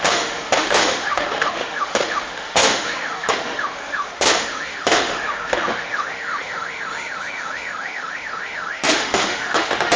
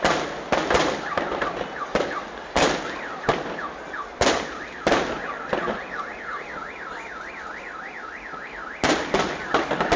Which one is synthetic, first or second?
first